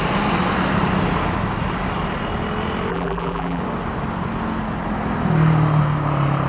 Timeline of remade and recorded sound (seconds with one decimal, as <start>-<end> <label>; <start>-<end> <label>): 0.0-2.9 recorded; 2.9-3.6 remade; 3.6-6.5 recorded